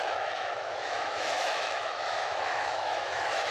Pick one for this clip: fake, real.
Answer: fake